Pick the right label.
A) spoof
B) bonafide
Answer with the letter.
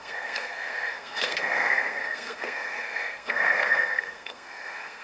A